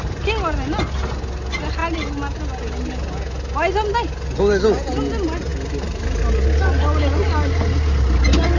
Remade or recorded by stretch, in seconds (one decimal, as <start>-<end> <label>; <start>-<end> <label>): 0.0-8.6 recorded